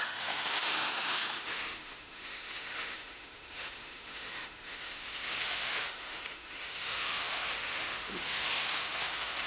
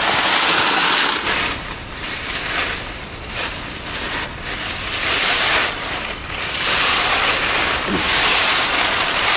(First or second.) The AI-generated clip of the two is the first